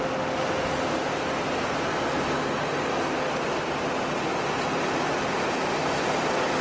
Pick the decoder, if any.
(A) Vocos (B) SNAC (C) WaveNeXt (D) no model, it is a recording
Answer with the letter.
D